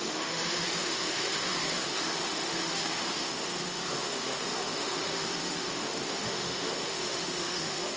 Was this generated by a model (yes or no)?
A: yes